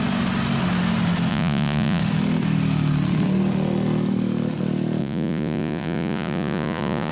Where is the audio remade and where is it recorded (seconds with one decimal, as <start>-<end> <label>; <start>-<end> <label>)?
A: 0.0-1.3 recorded; 1.3-2.0 remade; 2.0-5.0 recorded; 5.0-7.1 remade